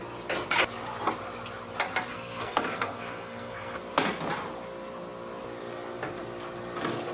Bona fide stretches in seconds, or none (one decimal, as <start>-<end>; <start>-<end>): 0.0-2.1; 3.8-7.1